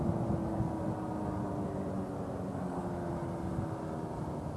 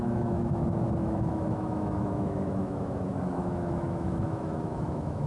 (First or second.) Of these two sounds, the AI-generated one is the second